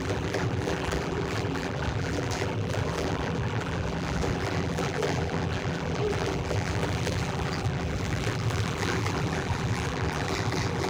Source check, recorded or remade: remade